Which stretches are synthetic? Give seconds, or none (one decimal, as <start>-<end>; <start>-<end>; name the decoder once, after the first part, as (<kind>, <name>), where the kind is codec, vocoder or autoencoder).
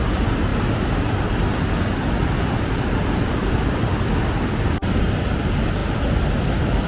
none